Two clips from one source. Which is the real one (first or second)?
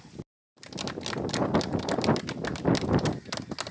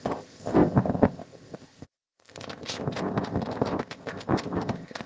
first